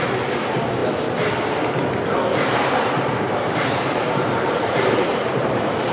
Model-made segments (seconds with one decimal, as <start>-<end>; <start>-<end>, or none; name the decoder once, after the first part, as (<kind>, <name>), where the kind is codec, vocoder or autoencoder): 2.3-5.9 (vocoder, BigVGAN v2)